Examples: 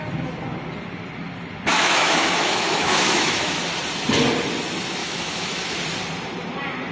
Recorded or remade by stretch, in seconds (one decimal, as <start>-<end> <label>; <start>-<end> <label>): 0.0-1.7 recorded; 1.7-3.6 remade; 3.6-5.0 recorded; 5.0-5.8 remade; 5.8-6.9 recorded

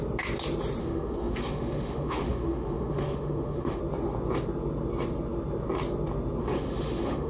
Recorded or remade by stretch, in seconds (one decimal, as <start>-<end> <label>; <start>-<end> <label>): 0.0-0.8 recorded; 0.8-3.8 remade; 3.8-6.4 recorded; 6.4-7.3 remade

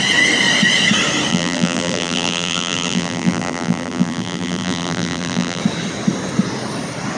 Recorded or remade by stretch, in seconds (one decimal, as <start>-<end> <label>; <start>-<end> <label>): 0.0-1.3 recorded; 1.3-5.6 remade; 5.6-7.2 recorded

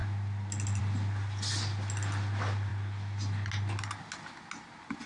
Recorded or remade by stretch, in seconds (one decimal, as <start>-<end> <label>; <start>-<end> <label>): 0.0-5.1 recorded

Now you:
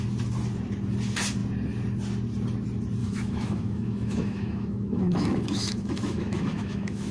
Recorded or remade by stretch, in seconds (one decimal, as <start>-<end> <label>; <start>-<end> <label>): 0.0-3.0 recorded; 3.0-7.1 remade

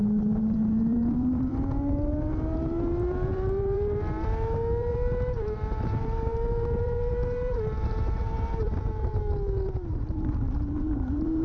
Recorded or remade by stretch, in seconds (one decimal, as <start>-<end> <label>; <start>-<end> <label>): 0.0-9.1 remade; 9.1-9.7 recorded; 9.7-11.4 remade